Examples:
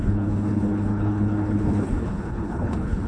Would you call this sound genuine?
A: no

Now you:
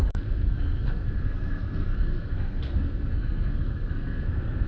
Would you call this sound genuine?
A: no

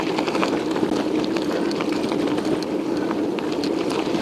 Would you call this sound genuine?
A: yes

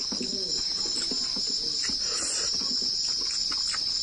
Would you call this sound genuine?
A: yes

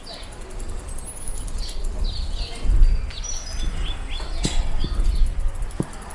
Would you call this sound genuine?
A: yes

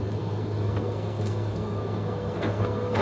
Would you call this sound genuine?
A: no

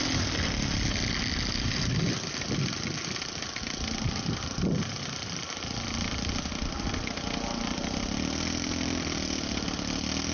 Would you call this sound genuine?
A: yes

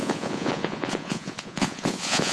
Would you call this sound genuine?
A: no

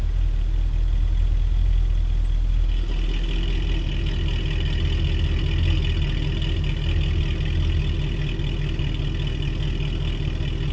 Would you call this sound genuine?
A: yes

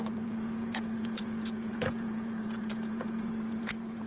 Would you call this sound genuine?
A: no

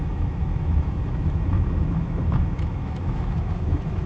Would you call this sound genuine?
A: no